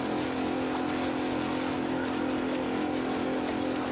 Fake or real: real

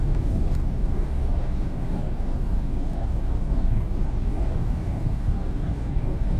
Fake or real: fake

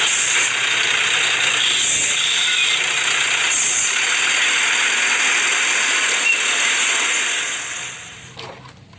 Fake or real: real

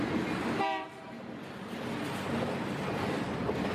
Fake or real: real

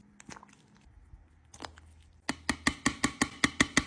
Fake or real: real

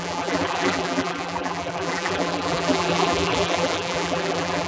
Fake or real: fake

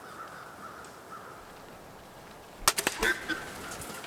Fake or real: real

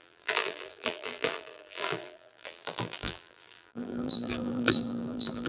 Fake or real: fake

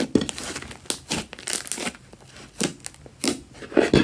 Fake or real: real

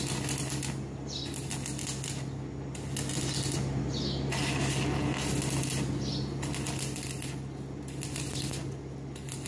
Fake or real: real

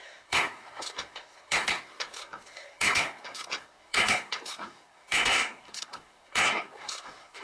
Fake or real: fake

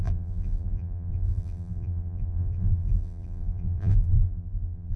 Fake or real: fake